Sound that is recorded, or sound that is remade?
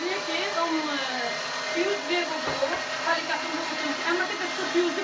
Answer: recorded